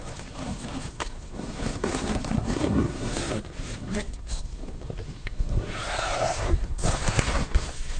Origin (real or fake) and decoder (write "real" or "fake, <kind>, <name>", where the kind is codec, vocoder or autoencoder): fake, codec, SNAC